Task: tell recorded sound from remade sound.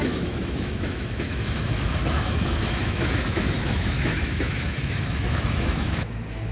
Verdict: remade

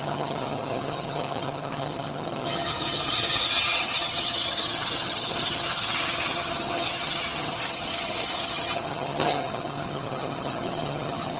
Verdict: remade